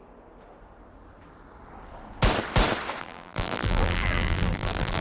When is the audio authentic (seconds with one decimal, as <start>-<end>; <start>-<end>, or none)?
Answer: 0.0-3.0